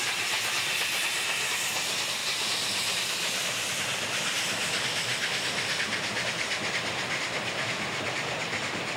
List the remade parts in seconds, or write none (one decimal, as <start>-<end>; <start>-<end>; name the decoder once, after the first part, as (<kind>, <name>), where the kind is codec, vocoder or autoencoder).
2.2-3.7 (vocoder, BigVGAN v2)